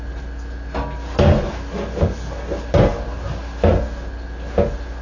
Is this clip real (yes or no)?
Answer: yes